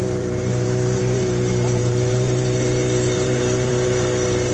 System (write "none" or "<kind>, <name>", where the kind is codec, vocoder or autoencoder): vocoder, BigVGAN v2